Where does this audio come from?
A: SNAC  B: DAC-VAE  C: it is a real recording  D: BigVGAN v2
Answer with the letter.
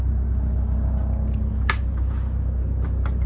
C